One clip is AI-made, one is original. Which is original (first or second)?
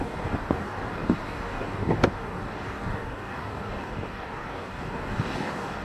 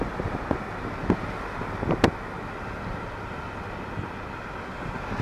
second